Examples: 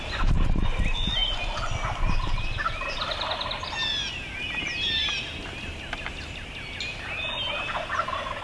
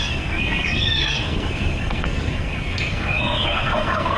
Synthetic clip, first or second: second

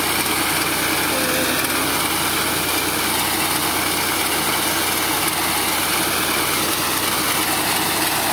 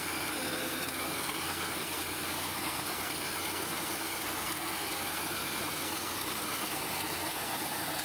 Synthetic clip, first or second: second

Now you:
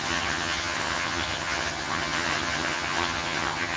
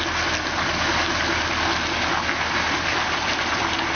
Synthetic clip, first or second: first